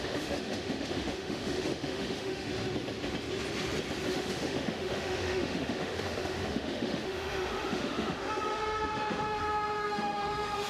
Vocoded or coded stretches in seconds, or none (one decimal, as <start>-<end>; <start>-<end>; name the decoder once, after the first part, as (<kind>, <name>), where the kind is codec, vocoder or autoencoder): 0.0-2.5 (autoencoder, DAC-VAE); 4.1-10.7

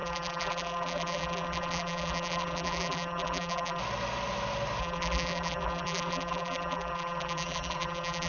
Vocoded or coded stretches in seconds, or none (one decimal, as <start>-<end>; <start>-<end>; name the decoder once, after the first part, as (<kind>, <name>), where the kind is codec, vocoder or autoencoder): 0.0-3.8 (vocoder, BigVGAN v2); 4.8-8.3

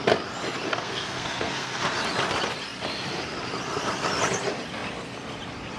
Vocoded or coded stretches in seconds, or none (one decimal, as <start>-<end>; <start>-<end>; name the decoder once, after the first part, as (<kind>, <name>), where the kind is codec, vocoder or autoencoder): 0.7-1.8 (codec, SNAC)

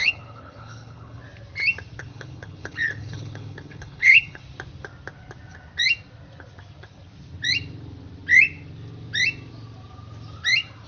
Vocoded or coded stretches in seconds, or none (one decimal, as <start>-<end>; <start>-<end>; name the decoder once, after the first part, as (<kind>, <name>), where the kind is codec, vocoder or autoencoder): 0.0-1.2 (codec, HILCodec); 2.0-4.4

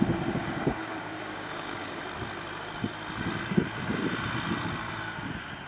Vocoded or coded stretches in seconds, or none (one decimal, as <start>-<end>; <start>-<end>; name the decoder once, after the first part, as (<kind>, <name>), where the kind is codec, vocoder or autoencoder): 0.4-2.0 (codec, DAC)

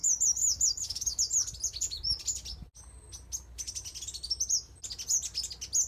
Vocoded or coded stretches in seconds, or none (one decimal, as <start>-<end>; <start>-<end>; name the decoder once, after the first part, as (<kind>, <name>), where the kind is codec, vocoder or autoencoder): 0.0-1.2 (autoencoder, DAC-VAE)

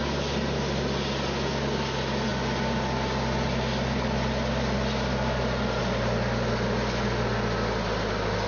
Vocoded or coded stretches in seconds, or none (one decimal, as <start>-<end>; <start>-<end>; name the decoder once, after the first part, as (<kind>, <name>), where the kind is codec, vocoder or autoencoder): none